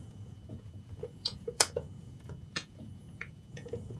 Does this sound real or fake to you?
fake